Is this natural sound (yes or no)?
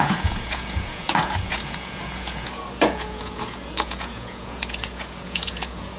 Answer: no